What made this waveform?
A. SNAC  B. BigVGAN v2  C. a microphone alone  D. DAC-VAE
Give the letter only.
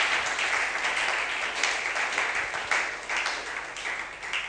C